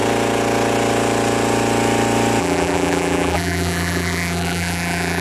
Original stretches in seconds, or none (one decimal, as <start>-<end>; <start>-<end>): 0.0-2.4